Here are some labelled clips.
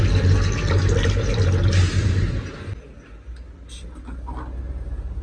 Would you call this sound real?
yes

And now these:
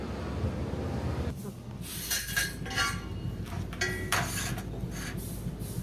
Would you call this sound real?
yes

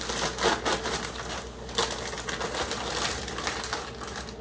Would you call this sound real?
yes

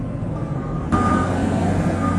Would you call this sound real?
no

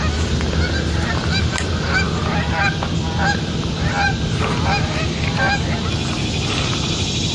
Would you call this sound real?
yes